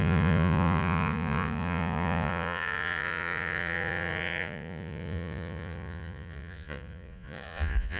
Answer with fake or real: fake